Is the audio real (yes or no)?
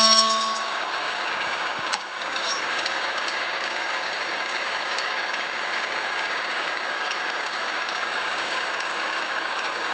no